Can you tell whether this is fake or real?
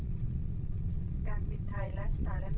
fake